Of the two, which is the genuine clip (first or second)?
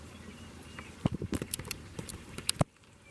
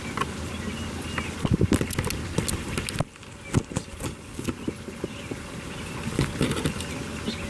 second